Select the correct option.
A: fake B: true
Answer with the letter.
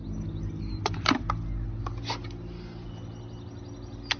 B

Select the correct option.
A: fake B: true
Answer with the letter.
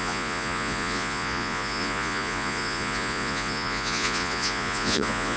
A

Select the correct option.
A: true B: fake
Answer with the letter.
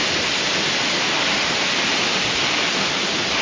A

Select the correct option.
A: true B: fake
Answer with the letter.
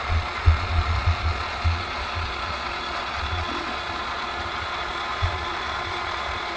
B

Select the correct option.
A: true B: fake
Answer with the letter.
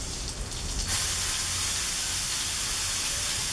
A